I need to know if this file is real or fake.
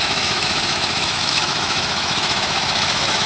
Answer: fake